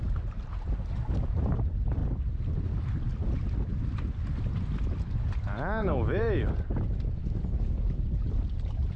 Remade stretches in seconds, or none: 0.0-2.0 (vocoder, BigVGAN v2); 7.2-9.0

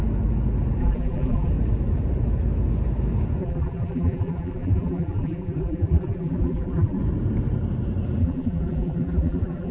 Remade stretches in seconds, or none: 0.8-1.5 (vocoder, BigVGAN v2); 3.4-7.0; 8.2-9.7

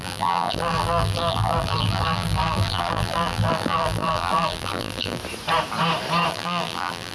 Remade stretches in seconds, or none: 0.0-5.2 (vocoder, BigVGAN v2); 6.3-7.1

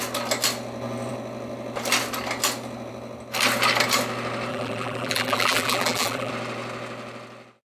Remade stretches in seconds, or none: 4.5-6.3 (vocoder, BigVGAN v2)

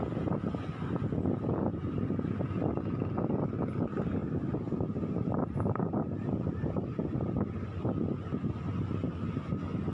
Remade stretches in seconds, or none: 4.2-7.1 (vocoder, BigVGAN v2)

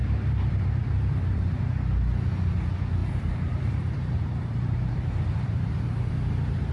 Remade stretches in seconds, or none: 0.0-1.6 (vocoder, BigVGAN v2); 3.0-6.1

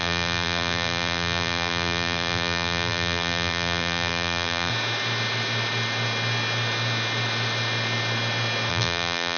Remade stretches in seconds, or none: 0.0-4.7 (vocoder, BigVGAN v2); 8.7-9.4

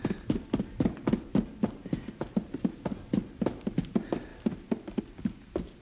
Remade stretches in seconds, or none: none